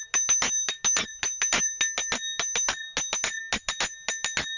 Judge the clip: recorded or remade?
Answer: recorded